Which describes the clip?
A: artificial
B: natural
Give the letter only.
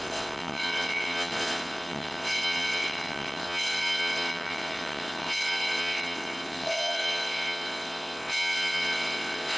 A